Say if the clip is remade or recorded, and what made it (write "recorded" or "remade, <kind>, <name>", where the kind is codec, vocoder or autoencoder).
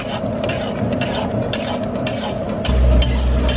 recorded